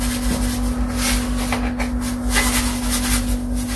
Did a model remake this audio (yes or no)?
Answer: no